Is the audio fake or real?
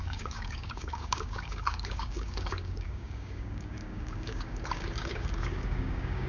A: fake